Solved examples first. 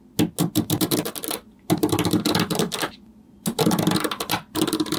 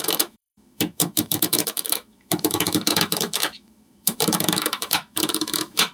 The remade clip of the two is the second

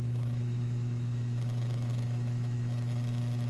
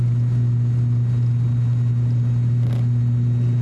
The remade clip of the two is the first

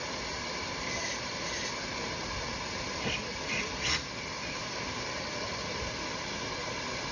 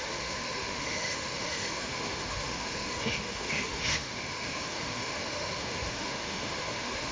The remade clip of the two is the second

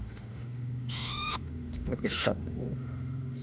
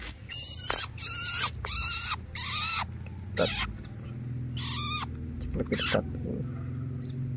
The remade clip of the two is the first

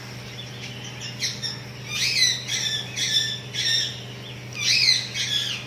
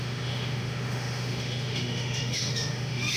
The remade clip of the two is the second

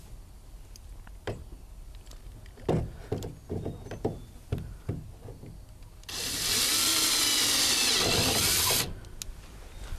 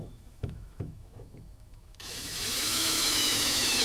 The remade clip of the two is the second